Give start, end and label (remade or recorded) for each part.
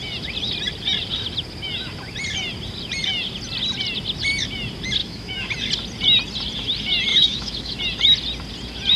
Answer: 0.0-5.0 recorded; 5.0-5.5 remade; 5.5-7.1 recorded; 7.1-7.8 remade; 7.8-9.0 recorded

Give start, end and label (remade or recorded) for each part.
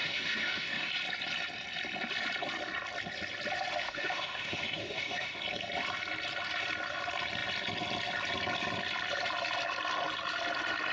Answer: 0.0-0.9 remade; 0.9-3.8 recorded; 3.8-5.4 remade; 5.4-10.9 recorded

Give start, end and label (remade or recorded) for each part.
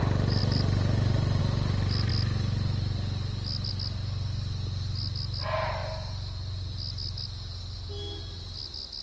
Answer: 0.0-9.0 recorded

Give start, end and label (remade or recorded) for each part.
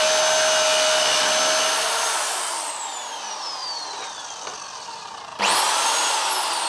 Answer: 0.0-6.7 recorded